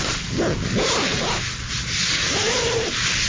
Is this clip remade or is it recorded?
recorded